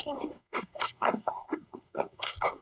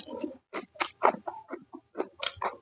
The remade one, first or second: first